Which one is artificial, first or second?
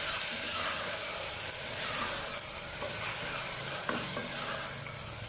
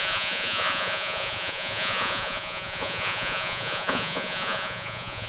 second